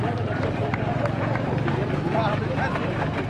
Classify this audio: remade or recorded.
remade